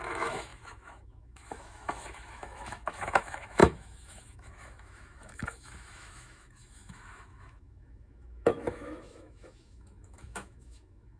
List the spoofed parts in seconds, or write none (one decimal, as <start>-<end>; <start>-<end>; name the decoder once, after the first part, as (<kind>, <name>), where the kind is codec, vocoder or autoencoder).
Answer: 0.0-11.2 (autoencoder, DAC-VAE)